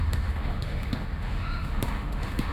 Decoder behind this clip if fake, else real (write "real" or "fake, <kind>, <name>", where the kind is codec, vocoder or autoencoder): fake, autoencoder, DAC-VAE